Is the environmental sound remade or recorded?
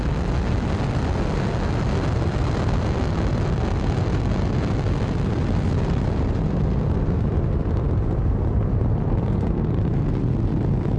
recorded